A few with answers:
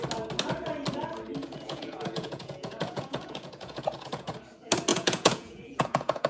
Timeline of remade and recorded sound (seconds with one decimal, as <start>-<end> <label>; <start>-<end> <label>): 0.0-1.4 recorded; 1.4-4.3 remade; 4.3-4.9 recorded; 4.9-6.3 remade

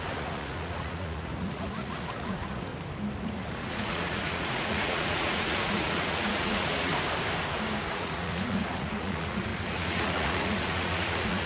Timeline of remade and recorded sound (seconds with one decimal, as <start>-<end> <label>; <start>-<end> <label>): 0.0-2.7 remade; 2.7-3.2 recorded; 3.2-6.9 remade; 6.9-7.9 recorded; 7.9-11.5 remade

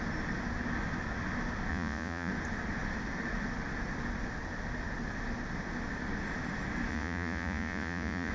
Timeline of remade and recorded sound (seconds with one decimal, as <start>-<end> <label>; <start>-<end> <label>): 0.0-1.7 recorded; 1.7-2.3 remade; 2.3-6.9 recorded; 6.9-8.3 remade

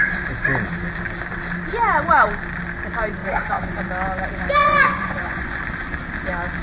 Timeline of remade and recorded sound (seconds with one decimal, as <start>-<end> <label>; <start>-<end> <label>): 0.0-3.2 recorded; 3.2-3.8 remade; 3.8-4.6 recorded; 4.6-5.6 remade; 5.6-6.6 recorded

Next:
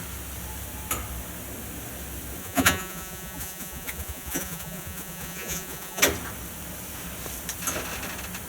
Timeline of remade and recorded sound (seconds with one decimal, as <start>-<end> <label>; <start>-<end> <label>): 0.0-2.4 recorded; 2.4-6.0 remade; 6.0-8.5 recorded

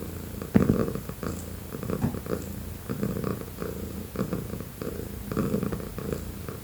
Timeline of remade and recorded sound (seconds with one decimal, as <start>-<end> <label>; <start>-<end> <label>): 0.0-3.3 recorded; 3.3-5.0 remade; 5.0-6.6 recorded